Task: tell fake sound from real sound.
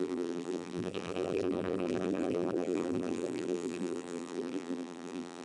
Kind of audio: fake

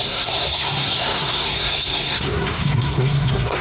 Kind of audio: fake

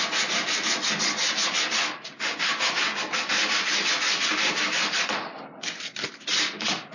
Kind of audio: real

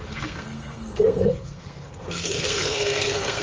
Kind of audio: fake